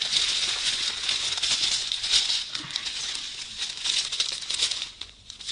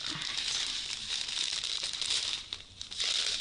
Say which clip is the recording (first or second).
second